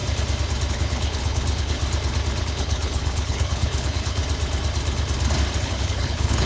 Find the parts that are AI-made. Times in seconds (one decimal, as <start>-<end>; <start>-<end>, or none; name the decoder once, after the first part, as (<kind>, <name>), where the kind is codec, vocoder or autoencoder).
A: 0.7-1.8 (codec, HILCodec); 2.4-4.2; 5.6-6.5